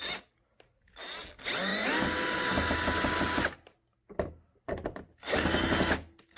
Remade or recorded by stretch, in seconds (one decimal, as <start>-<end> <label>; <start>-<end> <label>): 0.0-6.4 recorded